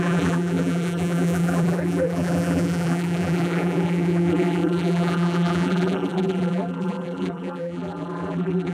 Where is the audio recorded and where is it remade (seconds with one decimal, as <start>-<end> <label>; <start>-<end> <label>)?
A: 0.0-8.7 remade